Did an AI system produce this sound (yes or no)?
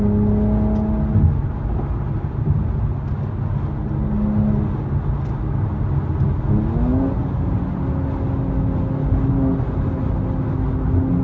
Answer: no